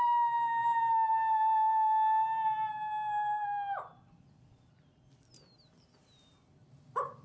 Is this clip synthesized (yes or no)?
no